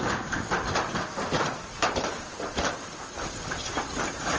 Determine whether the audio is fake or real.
real